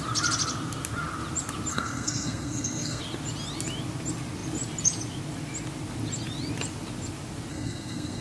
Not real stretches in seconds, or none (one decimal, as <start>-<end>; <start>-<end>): 1.7-3.0; 7.5-8.2